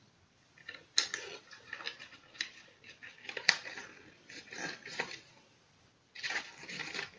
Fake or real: fake